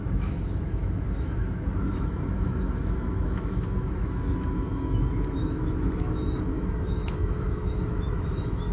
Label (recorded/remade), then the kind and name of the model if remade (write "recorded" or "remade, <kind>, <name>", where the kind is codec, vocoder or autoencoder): remade, autoencoder, DAC-VAE